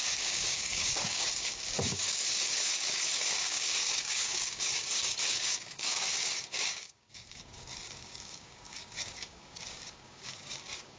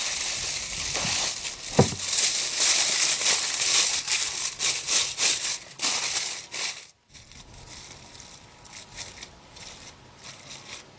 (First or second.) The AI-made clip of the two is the first